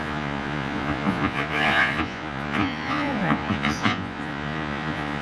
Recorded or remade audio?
remade